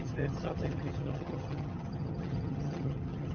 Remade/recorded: remade